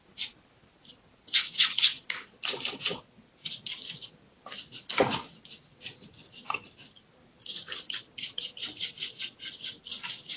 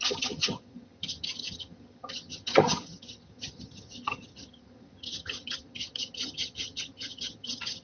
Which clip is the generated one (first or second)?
second